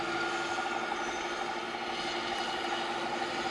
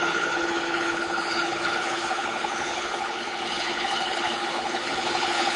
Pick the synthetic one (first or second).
second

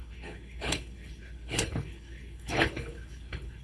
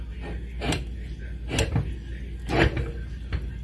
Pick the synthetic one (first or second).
first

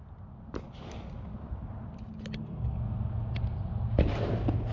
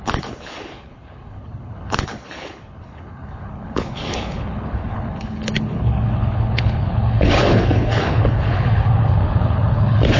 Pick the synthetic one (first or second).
second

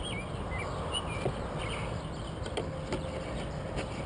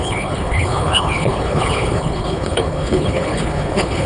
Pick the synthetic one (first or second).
second